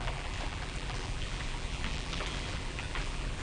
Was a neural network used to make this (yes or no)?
yes